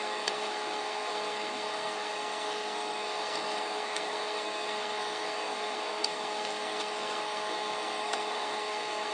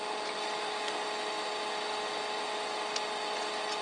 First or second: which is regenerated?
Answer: first